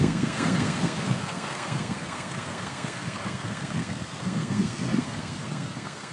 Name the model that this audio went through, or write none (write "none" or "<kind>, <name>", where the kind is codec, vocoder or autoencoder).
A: codec, SNAC